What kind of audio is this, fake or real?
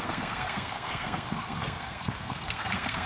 fake